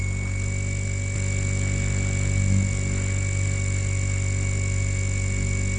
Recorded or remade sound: recorded